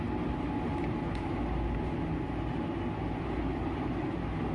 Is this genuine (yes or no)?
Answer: yes